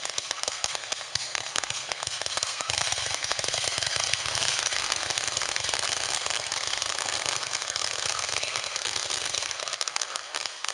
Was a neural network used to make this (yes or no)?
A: yes